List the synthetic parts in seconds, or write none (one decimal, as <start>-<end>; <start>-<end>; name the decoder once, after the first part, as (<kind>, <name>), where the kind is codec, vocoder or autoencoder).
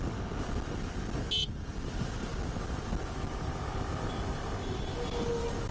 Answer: none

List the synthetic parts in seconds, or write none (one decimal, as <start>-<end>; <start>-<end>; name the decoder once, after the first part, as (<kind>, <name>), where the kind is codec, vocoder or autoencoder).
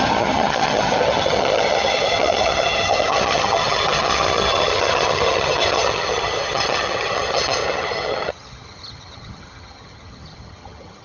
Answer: 0.0-11.0 (vocoder, HiFi-GAN)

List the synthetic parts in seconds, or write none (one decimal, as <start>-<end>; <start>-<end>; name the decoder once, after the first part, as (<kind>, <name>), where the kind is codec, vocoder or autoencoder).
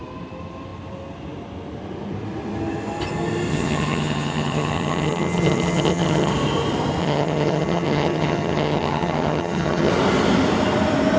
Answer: 3.5-6.3 (vocoder, HiFi-GAN); 7.0-9.9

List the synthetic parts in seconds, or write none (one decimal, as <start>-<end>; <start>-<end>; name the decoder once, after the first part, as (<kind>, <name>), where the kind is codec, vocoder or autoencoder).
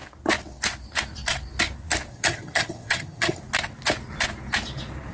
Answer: 2.1-3.4 (vocoder, HiFi-GAN)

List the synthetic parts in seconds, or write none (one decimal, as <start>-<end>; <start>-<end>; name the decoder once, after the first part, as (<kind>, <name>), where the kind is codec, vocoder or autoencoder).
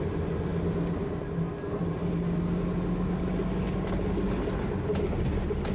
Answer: none